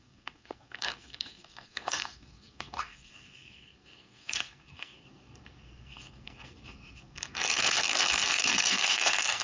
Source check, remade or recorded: remade